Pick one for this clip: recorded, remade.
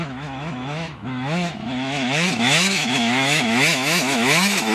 remade